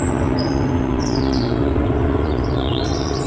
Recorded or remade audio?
remade